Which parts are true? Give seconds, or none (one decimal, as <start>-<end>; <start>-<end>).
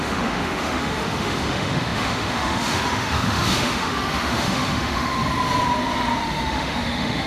5.2-6.2